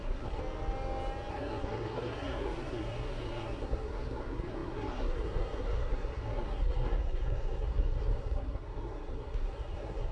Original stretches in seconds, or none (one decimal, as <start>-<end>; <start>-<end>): 0.4-1.3